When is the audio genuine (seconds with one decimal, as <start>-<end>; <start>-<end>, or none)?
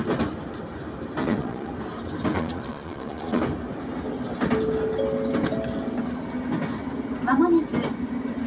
0.0-1.2; 1.7-2.3; 3.4-8.5